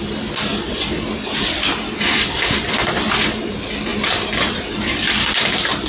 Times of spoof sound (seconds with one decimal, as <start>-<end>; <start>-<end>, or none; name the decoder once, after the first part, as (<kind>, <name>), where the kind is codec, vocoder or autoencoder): 0.5-2.7 (vocoder, BigVGAN v2); 3.9-5.9